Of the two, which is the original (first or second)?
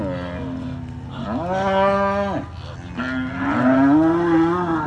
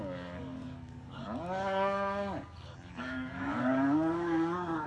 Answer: first